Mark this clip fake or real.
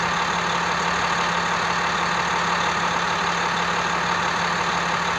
real